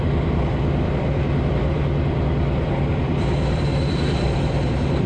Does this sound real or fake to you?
fake